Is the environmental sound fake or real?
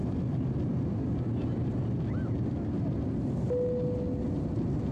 real